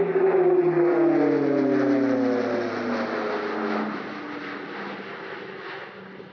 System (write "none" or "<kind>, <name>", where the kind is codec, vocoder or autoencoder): none